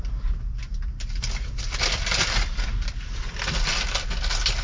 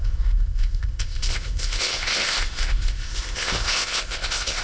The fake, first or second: second